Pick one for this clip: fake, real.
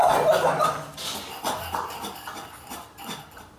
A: real